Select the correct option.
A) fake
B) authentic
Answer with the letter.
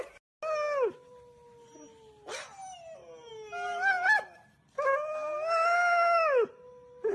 B